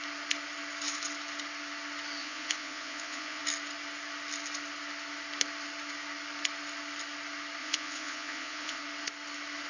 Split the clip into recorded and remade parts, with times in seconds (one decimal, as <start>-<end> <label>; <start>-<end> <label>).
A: 0.0-2.2 recorded; 2.2-3.4 remade; 3.4-7.6 recorded; 7.6-8.8 remade; 8.8-9.7 recorded